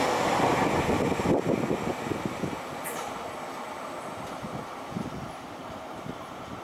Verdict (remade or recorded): recorded